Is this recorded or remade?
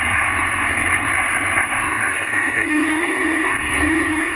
remade